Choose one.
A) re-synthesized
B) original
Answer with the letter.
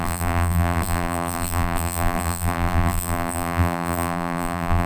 A